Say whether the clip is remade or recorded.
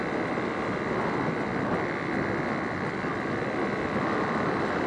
recorded